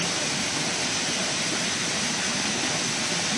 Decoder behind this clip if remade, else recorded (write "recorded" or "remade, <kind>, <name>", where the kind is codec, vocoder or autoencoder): recorded